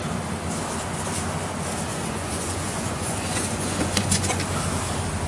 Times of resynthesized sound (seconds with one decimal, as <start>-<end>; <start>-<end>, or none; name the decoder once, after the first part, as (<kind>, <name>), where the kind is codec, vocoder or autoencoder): 1.9-4.4 (vocoder, Vocos)